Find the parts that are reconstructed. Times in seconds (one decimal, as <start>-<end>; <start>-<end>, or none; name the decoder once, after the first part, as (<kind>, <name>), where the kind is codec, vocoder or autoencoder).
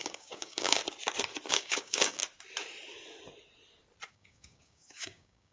0.0-0.8 (codec, DAC); 1.5-2.2; 4.1-5.5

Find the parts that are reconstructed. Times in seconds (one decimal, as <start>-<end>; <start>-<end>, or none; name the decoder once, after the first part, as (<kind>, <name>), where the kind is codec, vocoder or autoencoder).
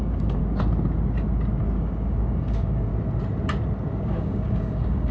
0.0-0.4 (codec, DAC); 1.6-2.9; 4.0-5.1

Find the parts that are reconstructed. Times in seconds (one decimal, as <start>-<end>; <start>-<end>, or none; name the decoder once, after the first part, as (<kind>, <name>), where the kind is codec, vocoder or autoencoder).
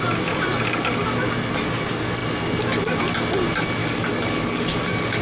3.8-5.2 (codec, DAC)